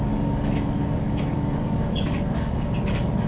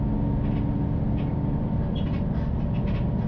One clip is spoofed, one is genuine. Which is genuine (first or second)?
second